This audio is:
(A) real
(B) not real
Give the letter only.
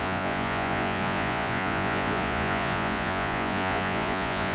B